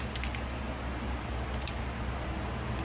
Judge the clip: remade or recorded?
recorded